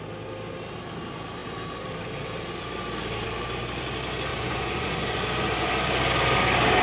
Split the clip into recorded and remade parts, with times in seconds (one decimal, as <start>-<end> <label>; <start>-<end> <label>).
0.0-4.3 recorded; 4.3-5.7 remade; 5.7-6.8 recorded